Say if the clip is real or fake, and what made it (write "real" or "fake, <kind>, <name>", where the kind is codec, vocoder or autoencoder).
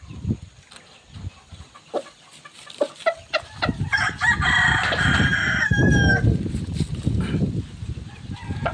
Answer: fake, vocoder, BigVGAN v2